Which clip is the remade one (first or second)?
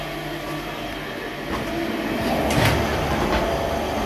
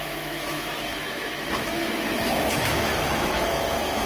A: second